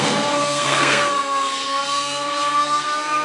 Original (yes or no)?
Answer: no